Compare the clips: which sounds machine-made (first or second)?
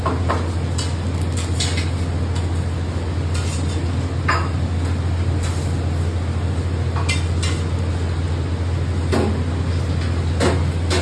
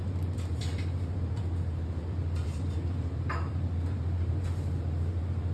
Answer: second